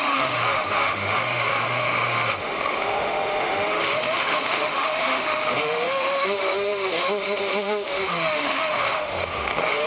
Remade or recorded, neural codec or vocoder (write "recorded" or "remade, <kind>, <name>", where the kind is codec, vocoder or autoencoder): remade, autoencoder, DAC-VAE